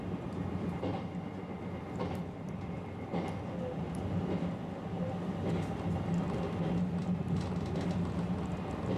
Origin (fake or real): real